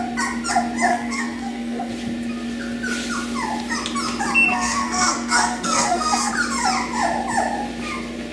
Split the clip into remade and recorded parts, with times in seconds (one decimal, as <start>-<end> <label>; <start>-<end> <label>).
0.0-0.9 recorded; 0.9-1.9 remade; 1.9-4.5 recorded; 4.5-6.3 remade; 6.3-8.3 recorded